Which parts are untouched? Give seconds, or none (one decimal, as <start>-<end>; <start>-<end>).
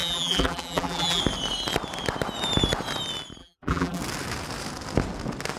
1.2-3.4; 4.0-5.6